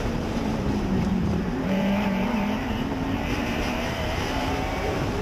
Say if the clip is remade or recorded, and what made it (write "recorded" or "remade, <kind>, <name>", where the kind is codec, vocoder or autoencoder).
remade, vocoder, BigVGAN v2